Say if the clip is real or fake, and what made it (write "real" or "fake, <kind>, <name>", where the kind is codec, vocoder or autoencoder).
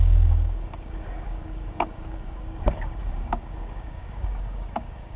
fake, codec, DAC